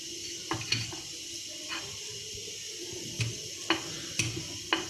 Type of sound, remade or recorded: recorded